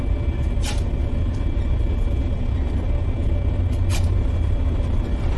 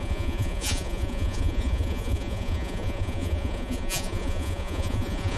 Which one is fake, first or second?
second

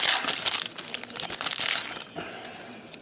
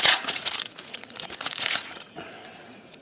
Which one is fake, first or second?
second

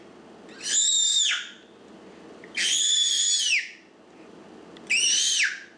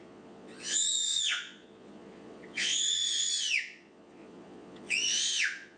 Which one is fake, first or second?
second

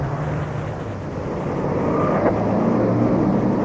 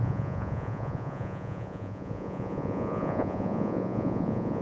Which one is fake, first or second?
second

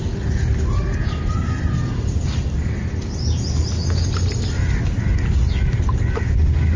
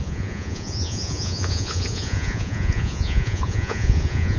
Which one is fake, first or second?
second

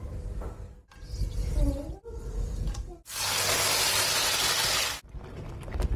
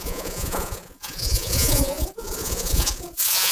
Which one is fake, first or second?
second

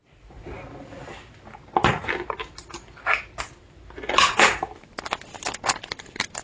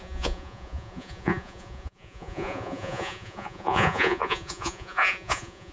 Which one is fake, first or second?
second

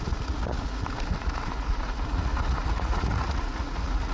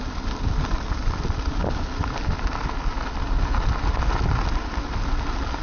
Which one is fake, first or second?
first